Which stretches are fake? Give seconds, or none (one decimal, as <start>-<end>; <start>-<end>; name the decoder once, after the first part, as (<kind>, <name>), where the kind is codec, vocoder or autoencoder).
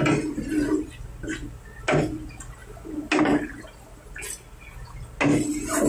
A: none